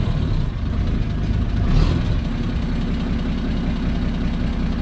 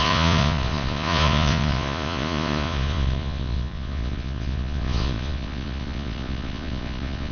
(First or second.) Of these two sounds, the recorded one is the first